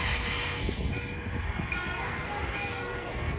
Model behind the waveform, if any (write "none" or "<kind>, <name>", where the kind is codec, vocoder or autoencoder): codec, SNAC